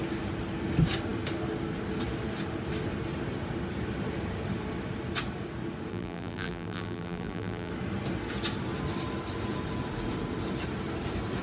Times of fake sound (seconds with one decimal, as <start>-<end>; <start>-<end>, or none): 5.9-7.7